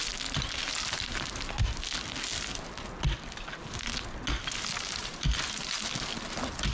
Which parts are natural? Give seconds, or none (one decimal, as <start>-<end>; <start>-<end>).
0.0-5.0; 5.6-6.7